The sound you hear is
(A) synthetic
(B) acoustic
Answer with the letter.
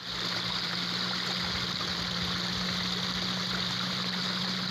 B